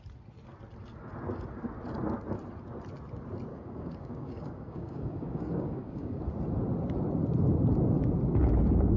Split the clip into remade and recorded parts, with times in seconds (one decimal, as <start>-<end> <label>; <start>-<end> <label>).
0.0-3.5 recorded; 3.5-6.2 remade; 6.2-9.0 recorded